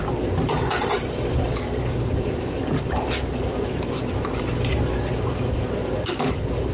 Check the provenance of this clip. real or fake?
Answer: fake